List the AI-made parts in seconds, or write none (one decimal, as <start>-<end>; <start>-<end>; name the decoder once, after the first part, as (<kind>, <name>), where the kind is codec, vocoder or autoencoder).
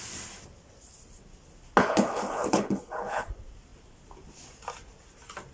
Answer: 1.8-3.3 (codec, HILCodec)